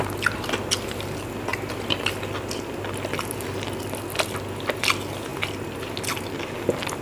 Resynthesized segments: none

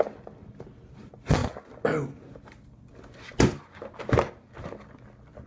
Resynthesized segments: none

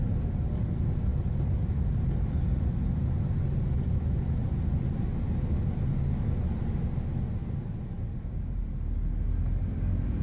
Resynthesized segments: 7.4-8.6 (vocoder, BigVGAN v2)

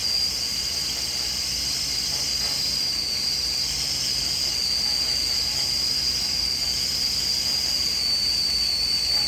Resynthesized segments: none

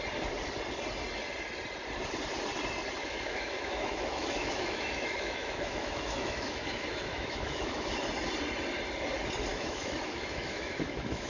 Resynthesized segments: 3.0-8.0 (autoencoder, DAC-VAE); 9.5-11.3

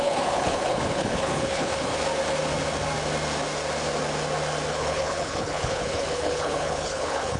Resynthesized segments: 0.0-1.9 (codec, HILCodec); 4.7-7.4